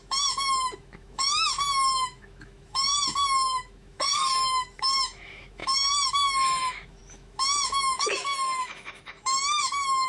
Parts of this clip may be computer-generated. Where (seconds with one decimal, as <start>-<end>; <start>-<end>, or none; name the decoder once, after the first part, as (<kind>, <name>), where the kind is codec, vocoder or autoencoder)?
0.0-10.1 (autoencoder, DAC-VAE)

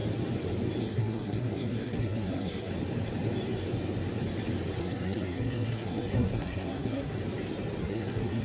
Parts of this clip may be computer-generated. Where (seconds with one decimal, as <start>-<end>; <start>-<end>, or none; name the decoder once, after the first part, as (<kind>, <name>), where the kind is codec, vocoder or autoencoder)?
0.8-2.7 (codec, SNAC); 4.8-7.2; 7.8-8.4